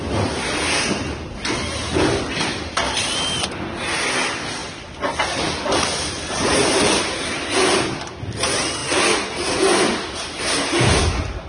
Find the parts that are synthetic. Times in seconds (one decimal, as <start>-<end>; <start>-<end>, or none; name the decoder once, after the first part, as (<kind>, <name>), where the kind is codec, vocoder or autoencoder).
none